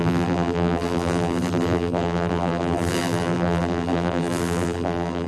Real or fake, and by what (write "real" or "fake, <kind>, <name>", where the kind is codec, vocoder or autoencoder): fake, vocoder, BigVGAN v2